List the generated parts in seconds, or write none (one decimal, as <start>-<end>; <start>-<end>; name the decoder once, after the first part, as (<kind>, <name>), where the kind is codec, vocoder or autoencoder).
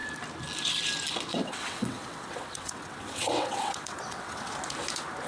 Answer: 1.3-4.5 (vocoder, WaveNeXt)